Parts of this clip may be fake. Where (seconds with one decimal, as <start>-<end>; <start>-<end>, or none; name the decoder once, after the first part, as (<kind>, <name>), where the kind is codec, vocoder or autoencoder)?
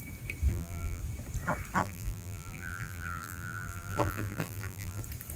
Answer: 0.5-1.0 (vocoder, BigVGAN v2); 1.8-5.0